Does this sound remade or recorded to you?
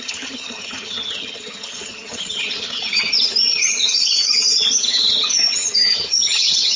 remade